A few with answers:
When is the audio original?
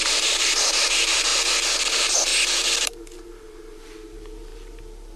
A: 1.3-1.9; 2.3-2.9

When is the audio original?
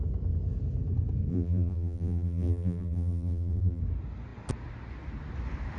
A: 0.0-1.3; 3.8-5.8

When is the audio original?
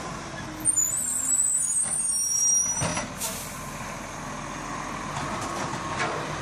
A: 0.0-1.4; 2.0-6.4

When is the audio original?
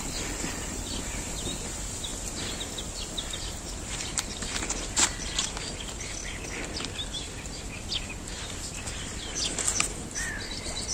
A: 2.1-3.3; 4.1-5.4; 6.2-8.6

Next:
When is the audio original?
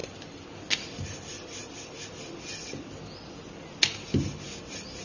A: 0.5-5.0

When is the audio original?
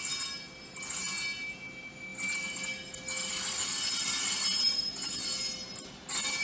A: 0.0-2.1; 5.1-6.4